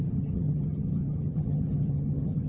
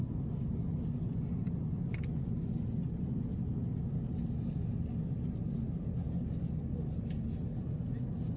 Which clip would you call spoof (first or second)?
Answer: first